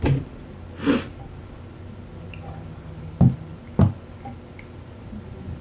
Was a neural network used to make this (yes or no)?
no